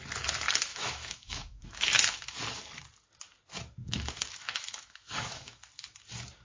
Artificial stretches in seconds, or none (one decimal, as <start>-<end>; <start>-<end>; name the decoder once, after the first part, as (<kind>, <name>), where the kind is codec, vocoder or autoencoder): 0.7-2.4 (autoencoder, DAC-VAE); 3.8-5.6